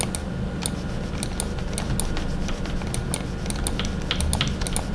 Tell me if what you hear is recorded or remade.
recorded